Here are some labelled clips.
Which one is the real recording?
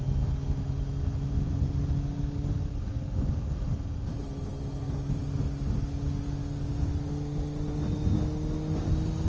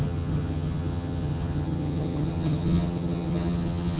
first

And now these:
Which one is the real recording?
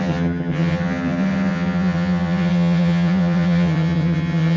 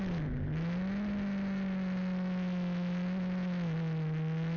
second